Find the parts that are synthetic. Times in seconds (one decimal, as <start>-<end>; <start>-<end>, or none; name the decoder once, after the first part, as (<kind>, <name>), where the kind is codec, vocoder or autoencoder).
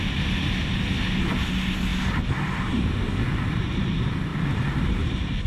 4.3-5.5 (vocoder, BigVGAN v2)